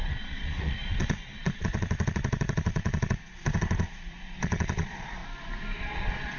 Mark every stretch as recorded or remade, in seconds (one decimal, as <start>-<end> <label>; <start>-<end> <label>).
0.0-5.2 remade; 5.2-5.8 recorded; 5.8-6.4 remade